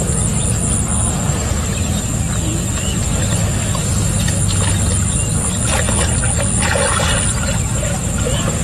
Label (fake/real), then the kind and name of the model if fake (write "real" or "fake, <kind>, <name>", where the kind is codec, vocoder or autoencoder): real